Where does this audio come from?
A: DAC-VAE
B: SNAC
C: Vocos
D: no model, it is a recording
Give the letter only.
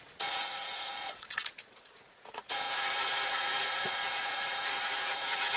C